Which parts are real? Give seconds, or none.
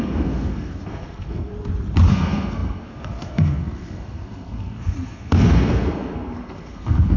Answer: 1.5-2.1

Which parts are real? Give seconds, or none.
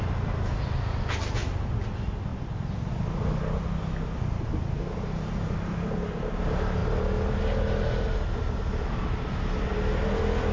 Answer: 0.0-10.5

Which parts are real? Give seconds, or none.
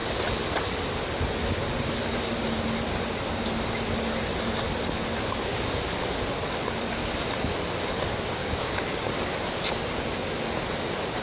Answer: 0.0-8.4; 9.1-11.2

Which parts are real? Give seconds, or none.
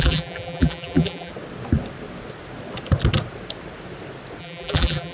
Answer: 1.3-4.4